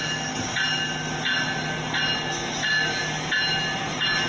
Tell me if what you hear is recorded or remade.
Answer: recorded